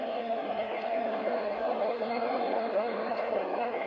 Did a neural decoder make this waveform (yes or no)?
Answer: yes